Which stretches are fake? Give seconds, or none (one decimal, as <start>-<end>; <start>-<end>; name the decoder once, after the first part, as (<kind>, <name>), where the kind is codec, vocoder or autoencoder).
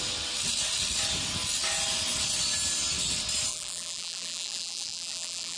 3.5-5.6 (vocoder, BigVGAN v2)